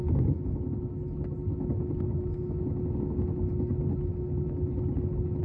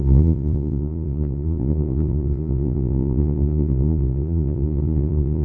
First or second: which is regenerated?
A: second